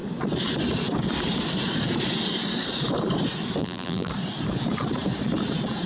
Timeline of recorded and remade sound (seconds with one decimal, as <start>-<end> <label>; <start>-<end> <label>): 0.0-3.6 recorded; 3.6-4.1 remade; 4.1-5.9 recorded